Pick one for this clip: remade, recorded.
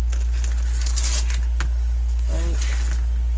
recorded